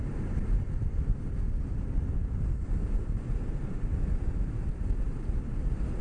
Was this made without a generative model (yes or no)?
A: yes